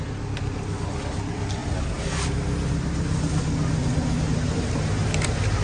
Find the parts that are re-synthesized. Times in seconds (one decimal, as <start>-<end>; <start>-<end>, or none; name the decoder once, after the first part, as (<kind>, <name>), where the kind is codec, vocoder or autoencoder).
none